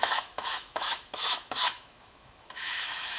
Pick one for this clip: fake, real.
fake